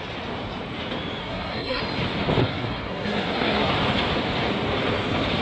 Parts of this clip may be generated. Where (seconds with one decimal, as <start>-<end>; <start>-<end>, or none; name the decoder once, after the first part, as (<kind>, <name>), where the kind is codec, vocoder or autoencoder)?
1.2-1.8 (codec, SNAC); 2.4-3.7